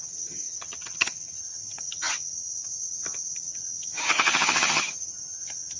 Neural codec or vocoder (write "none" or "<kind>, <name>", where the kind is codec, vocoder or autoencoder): vocoder, HiFi-GAN